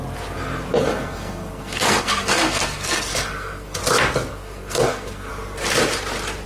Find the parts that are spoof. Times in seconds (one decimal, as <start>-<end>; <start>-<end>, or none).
0.7-3.8; 4.3-5.3

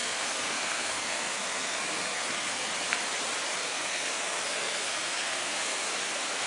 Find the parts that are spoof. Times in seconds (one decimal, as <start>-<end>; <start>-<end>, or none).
0.0-2.7; 3.6-5.9

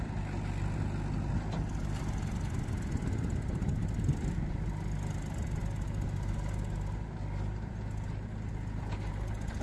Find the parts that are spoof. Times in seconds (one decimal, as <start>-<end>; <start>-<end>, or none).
none

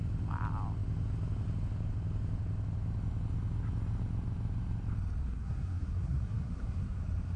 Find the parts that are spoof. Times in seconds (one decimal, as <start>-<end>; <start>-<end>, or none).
5.2-7.0

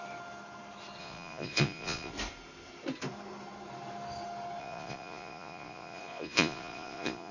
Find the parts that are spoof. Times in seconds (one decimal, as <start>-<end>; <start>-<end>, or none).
1.0-2.1; 4.6-7.3

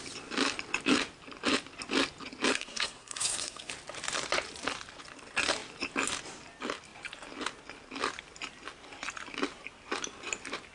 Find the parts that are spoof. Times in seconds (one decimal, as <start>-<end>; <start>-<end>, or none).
2.5-3.7

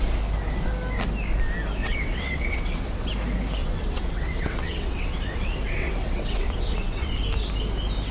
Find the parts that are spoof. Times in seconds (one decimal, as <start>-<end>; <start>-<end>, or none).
1.8-3.1; 3.6-7.1

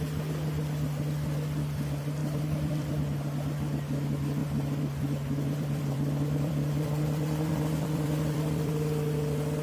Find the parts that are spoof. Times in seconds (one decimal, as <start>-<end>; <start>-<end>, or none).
2.2-2.9; 4.4-8.7